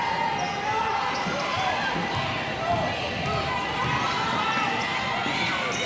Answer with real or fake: real